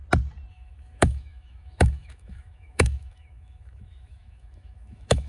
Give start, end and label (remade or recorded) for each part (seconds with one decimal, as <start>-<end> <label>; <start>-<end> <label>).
0.0-0.5 recorded; 0.5-5.3 remade